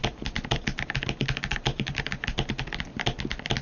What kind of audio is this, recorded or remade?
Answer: recorded